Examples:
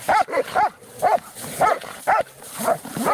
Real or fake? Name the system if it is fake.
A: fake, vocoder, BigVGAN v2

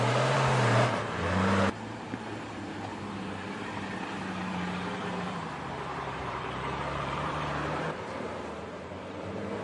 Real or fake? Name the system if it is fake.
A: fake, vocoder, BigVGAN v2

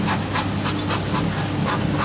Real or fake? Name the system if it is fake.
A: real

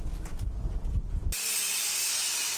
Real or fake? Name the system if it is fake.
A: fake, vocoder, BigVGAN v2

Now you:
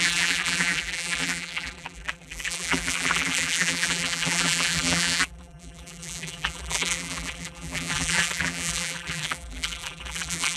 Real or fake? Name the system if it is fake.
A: fake, vocoder, BigVGAN v2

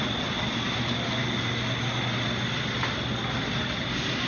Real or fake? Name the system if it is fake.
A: real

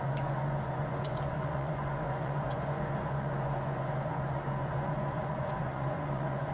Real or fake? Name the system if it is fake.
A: fake, vocoder, Vocos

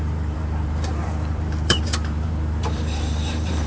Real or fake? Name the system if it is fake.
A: fake, vocoder, BigVGAN v2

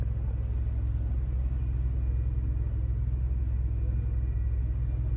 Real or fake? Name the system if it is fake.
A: real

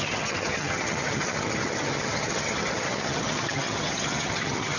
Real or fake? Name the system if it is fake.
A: fake, vocoder, HiFi-GAN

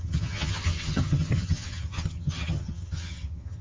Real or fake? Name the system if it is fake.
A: fake, vocoder, HiFi-GAN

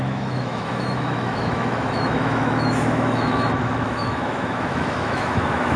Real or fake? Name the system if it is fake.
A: fake, autoencoder, DAC-VAE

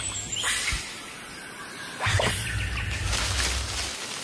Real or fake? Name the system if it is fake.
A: real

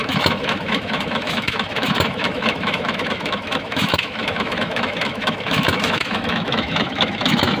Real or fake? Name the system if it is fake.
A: fake, autoencoder, DAC-VAE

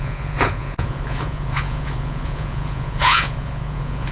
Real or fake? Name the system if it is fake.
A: fake, vocoder, Vocos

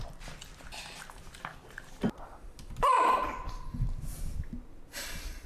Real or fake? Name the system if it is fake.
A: real